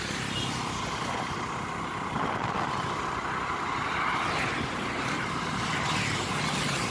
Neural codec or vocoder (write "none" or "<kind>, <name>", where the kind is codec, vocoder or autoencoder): none